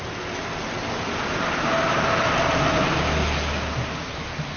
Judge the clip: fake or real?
real